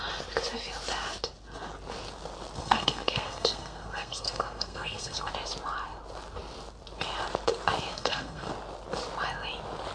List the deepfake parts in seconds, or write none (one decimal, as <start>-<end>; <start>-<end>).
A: 2.6-5.3; 7.9-8.5